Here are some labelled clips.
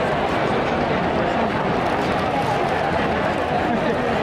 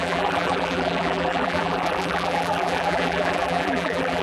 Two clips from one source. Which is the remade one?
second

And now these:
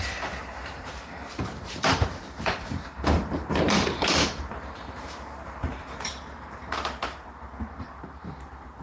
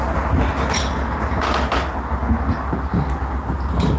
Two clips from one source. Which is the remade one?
first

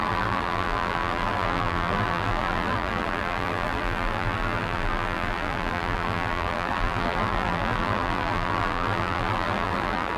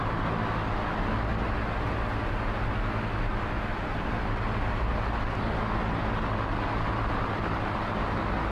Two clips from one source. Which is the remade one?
first